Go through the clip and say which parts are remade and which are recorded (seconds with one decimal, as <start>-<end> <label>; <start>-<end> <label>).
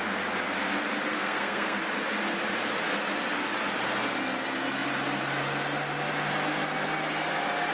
0.0-1.1 recorded; 1.1-1.8 remade; 1.8-7.7 recorded